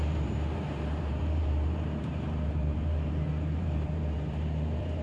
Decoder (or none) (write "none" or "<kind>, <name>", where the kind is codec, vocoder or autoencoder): vocoder, BigVGAN v2